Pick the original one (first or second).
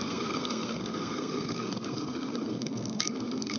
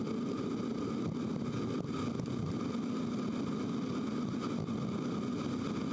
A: second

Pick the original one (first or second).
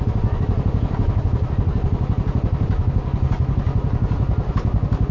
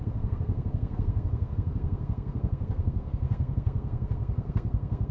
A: first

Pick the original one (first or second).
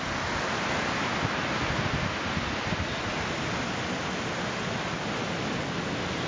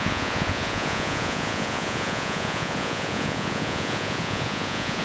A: first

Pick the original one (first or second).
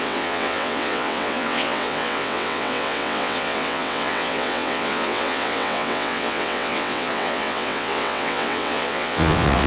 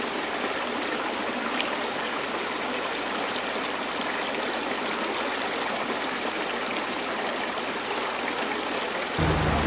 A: second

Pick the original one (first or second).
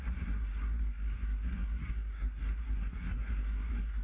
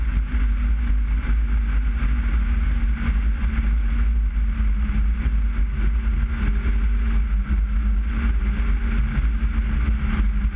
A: second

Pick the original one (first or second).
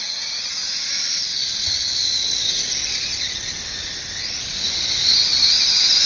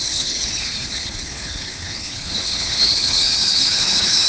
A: first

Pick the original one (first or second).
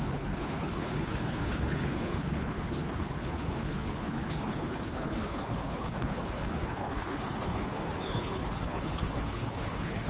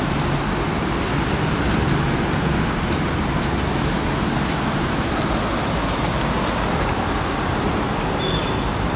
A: second